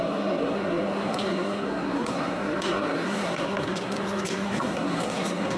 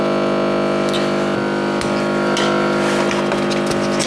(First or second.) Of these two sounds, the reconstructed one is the first